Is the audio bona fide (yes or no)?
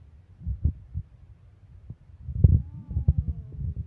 yes